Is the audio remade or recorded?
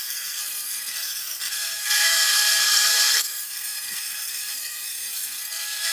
remade